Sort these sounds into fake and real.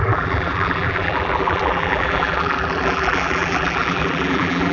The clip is fake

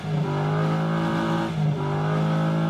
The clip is real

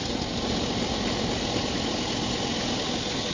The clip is real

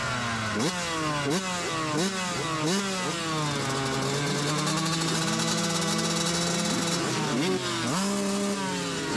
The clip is real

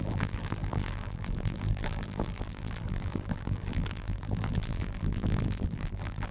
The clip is fake